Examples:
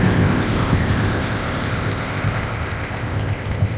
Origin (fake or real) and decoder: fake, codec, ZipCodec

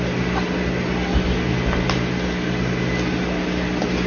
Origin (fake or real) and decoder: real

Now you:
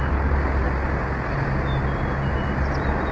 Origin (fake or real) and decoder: real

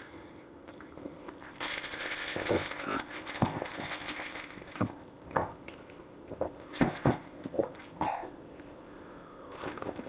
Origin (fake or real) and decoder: fake, codec, ZipCodec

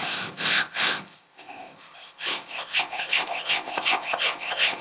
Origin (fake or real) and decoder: fake, codec, ZipCodec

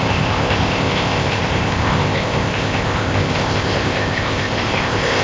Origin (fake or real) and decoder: fake, codec, ZipCodec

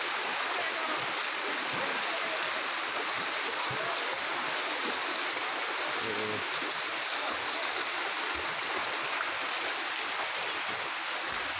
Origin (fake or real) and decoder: real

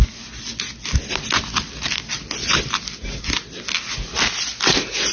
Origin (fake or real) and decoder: real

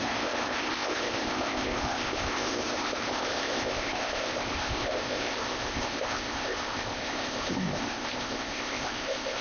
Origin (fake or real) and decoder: fake, codec, ZipCodec